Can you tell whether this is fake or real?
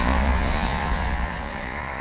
fake